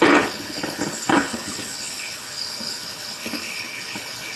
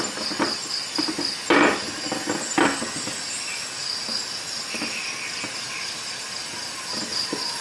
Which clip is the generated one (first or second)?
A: first